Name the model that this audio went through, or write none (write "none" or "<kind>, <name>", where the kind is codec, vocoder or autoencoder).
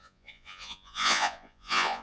vocoder, Vocos